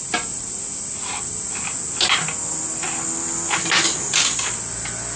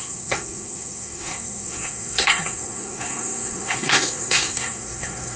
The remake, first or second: second